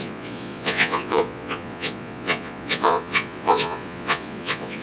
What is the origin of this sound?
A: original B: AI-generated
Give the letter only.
B